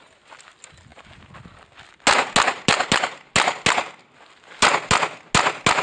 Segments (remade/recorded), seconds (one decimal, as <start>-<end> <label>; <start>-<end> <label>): 0.0-5.8 recorded